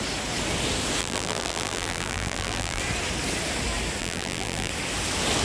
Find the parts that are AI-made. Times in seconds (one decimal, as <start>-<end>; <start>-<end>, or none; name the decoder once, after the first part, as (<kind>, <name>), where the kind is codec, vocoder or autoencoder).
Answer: 1.0-2.8 (vocoder, BigVGAN v2); 4.0-4.7